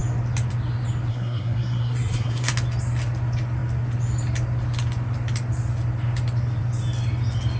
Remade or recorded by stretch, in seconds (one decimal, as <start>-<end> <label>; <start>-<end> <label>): 0.0-1.1 recorded; 1.1-2.5 remade; 2.5-7.6 recorded